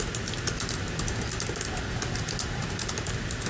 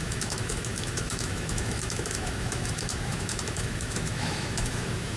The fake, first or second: second